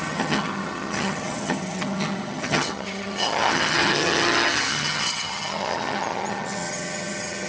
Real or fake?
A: fake